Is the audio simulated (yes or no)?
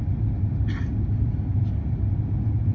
no